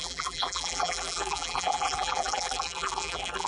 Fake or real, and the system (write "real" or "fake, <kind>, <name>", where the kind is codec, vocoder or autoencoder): fake, vocoder, BigVGAN v2